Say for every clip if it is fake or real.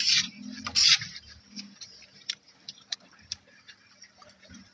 fake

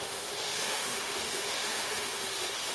fake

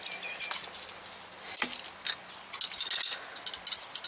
real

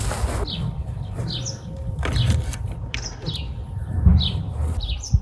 real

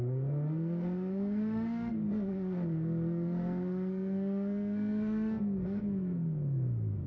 fake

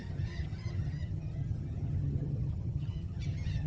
fake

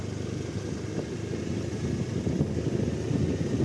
real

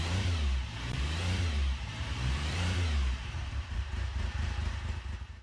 fake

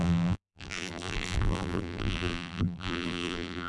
fake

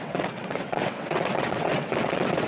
fake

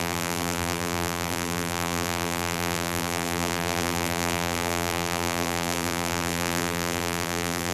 fake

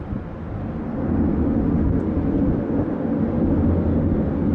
real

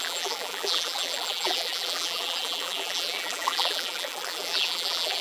fake